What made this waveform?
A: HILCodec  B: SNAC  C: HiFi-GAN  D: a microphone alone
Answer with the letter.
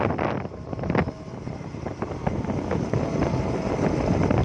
D